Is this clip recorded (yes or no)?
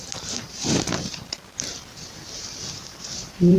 no